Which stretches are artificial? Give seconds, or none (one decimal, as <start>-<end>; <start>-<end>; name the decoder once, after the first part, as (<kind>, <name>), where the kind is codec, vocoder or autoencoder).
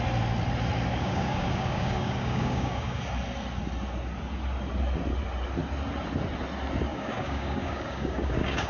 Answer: 0.9-3.0 (codec, DAC); 6.9-8.7